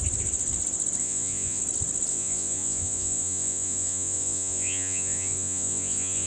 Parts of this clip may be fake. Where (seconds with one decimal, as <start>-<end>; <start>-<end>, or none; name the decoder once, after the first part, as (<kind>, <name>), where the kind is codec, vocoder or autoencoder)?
1.0-1.6 (vocoder, Vocos); 2.1-6.3